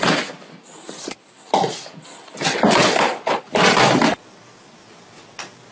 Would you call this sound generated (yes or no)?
no